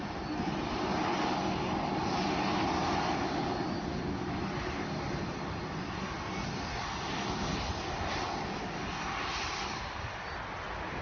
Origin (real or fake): real